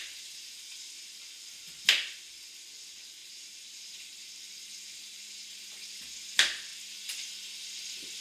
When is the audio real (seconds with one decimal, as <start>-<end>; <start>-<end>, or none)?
0.0-3.2; 5.9-8.2